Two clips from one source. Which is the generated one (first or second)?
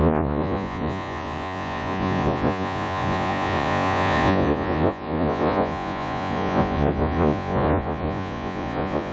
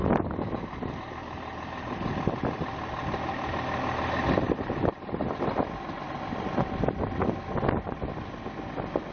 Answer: first